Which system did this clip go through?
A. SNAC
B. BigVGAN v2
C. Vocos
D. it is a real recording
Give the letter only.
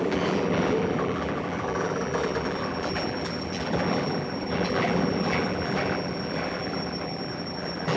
B